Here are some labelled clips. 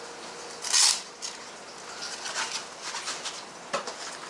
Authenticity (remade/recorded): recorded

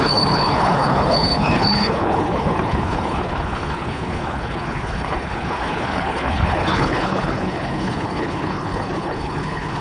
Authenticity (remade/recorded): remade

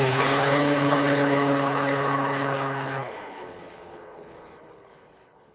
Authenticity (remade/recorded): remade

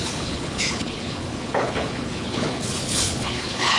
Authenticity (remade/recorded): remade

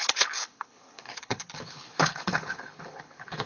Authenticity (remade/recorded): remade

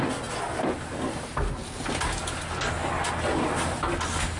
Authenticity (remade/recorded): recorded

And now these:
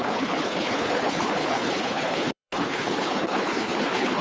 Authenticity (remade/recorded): remade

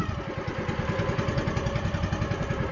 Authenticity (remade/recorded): recorded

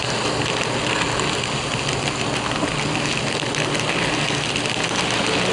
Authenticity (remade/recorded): recorded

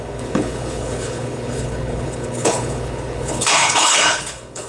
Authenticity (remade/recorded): remade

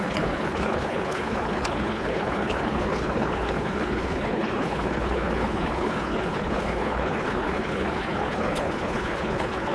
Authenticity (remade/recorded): remade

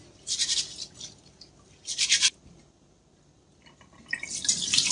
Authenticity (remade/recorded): recorded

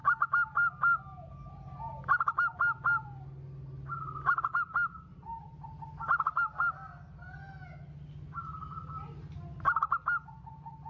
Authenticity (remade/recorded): recorded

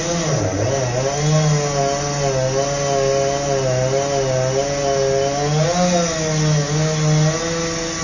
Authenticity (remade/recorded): recorded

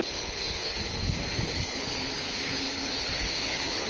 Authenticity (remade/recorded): remade